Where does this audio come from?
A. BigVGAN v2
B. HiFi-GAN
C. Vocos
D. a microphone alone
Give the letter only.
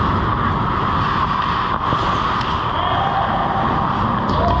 D